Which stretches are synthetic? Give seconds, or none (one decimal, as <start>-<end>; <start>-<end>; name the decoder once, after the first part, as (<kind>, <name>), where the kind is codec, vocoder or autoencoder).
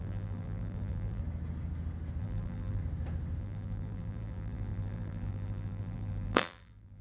0.0-1.2 (vocoder, BigVGAN v2); 2.2-2.8; 3.4-7.0